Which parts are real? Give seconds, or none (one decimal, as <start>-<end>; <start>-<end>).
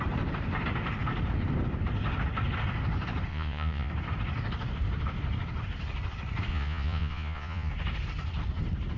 0.0-3.3; 3.9-6.5; 7.7-9.0